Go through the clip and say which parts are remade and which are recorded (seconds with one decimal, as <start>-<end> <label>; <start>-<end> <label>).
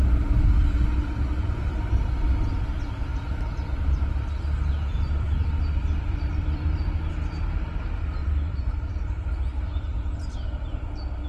0.0-3.1 recorded; 3.1-7.1 remade; 7.1-8.2 recorded; 8.2-8.9 remade; 8.9-9.9 recorded; 9.9-11.3 remade